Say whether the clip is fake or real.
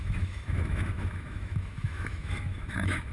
fake